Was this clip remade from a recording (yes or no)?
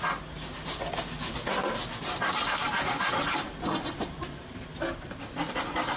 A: no